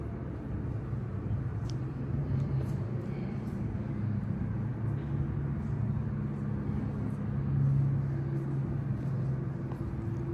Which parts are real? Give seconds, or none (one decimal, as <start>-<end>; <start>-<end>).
0.0-1.5; 4.2-10.3